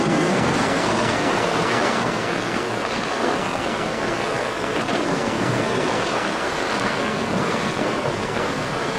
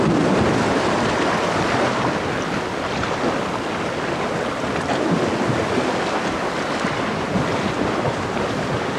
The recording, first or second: second